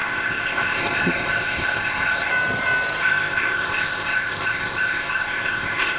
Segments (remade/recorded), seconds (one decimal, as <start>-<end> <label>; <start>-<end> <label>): 0.0-2.3 remade; 2.3-3.0 recorded; 3.0-6.0 remade